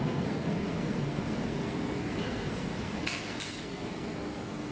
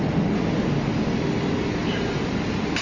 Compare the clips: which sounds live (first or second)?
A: second